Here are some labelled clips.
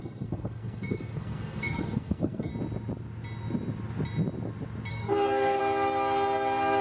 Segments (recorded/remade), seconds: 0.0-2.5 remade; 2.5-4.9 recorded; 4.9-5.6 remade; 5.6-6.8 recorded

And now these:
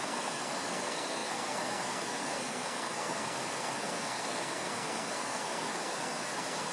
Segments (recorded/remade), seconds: 0.0-6.7 remade

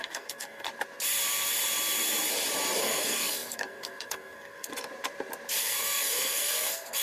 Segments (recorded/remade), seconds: 0.0-0.7 remade; 0.7-2.8 recorded; 2.8-4.7 remade; 4.7-5.6 recorded; 5.6-7.0 remade